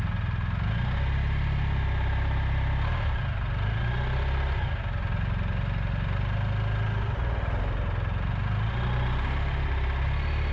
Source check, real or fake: real